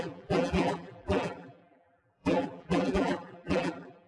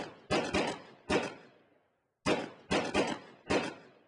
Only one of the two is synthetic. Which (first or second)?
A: first